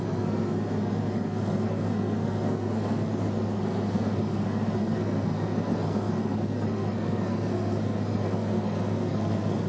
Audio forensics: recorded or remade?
remade